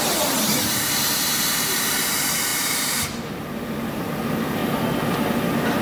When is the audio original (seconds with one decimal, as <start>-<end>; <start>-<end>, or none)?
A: 4.6-5.8